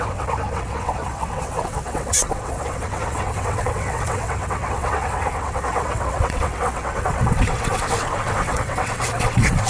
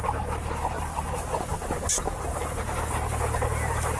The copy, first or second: first